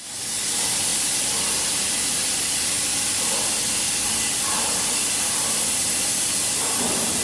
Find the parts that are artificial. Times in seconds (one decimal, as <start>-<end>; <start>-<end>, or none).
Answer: none